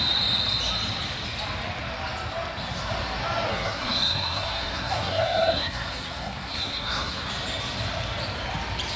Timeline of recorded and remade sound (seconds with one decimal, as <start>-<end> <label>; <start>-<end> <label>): 0.0-3.5 recorded; 3.5-7.3 remade; 7.3-9.0 recorded